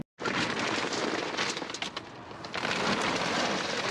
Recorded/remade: recorded